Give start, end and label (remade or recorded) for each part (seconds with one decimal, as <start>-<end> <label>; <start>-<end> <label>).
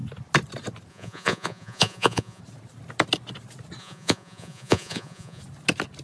0.0-0.9 recorded; 0.9-2.4 remade; 2.4-3.8 recorded; 3.8-5.4 remade; 5.4-6.0 recorded